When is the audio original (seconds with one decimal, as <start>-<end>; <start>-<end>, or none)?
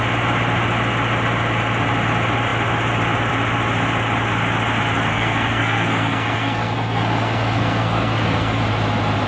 0.0-5.1; 8.6-9.3